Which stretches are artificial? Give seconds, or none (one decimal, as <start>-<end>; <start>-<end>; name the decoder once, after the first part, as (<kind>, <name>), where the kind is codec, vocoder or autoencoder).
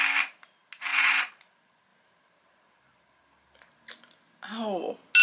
0.9-1.4 (vocoder, Vocos)